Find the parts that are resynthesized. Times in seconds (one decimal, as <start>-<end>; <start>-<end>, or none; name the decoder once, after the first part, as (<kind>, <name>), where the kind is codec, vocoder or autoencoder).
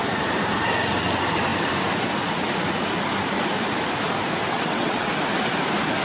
4.4-5.1 (vocoder, WaveNeXt)